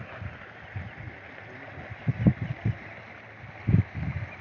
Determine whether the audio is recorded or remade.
recorded